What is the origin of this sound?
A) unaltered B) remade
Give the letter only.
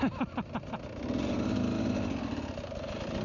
A